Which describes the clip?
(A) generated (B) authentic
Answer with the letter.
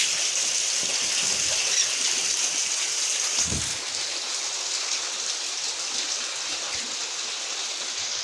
B